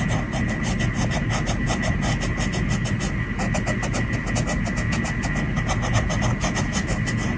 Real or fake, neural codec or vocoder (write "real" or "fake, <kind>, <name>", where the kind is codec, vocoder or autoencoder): real